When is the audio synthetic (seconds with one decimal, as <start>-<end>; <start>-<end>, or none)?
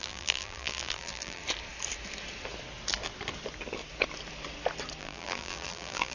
0.0-1.4; 5.0-6.1